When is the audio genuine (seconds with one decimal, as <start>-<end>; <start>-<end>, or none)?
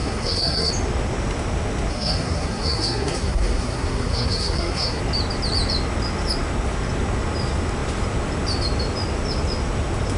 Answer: 0.7-1.9; 5.0-10.2